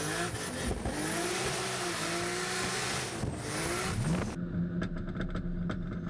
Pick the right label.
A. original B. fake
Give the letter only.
A